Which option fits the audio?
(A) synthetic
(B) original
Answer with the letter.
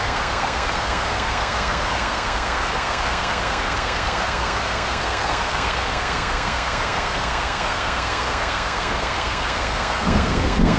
A